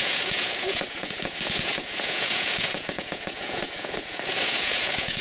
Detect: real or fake fake